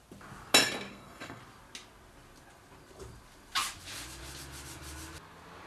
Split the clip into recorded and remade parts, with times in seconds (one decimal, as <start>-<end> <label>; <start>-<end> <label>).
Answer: 0.0-0.9 recorded; 0.9-1.4 remade; 1.4-5.7 recorded